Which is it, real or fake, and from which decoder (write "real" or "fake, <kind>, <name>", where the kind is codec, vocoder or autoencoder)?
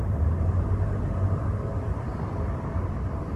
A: real